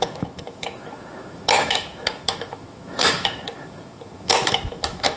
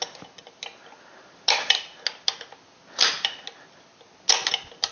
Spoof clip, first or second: first